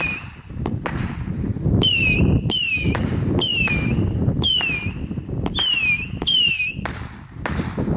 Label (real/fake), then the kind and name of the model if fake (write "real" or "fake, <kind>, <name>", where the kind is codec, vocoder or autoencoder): real